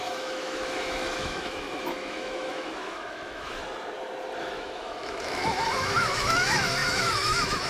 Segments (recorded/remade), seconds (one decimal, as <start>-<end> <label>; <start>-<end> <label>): 0.0-3.6 remade; 3.6-4.4 recorded; 4.4-7.7 remade